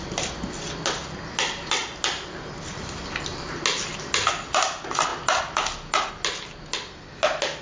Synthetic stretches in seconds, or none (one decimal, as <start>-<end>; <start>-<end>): none